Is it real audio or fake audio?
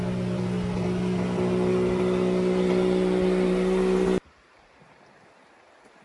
real